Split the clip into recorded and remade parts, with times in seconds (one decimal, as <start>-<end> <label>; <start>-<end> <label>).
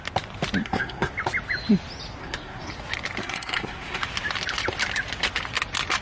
0.0-0.6 recorded; 0.6-1.1 remade; 1.1-2.2 recorded; 2.2-2.7 remade; 2.7-3.2 recorded; 3.2-4.0 remade; 4.0-6.0 recorded